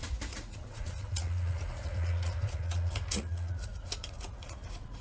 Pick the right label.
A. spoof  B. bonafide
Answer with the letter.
A